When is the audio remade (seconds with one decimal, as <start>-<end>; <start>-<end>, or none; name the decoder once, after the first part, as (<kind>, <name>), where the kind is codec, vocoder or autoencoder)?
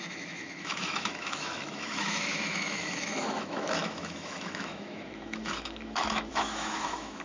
0.0-7.2 (autoencoder, DAC-VAE)